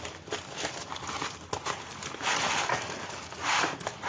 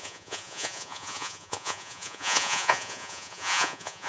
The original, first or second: first